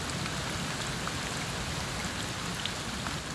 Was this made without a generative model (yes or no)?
yes